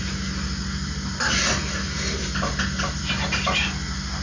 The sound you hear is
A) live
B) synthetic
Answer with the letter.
A